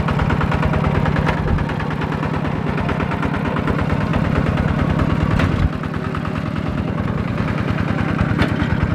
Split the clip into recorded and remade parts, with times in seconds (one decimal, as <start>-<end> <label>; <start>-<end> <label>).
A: 0.0-4.1 recorded; 4.1-4.9 remade; 4.9-6.7 recorded; 6.7-8.9 remade